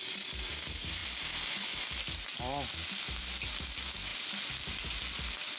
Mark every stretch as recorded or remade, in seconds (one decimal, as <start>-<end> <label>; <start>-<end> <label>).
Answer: 0.0-4.1 recorded; 4.1-5.6 remade